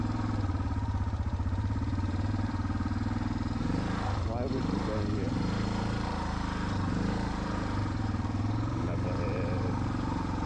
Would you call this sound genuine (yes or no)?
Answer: no